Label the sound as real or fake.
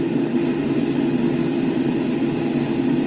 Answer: real